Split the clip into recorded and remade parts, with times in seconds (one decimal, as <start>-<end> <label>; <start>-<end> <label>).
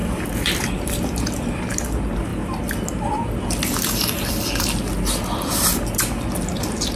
0.0-1.6 remade; 1.6-7.0 recorded